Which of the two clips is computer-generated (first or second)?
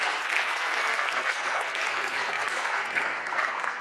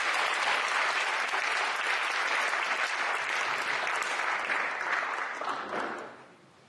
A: first